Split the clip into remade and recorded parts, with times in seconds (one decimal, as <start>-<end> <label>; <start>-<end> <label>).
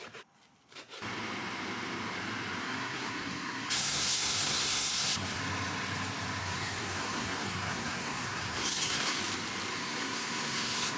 0.0-2.6 recorded; 2.6-5.4 remade; 5.4-6.4 recorded; 6.4-9.2 remade; 9.2-9.7 recorded; 9.7-11.0 remade